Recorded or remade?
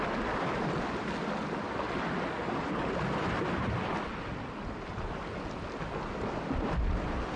recorded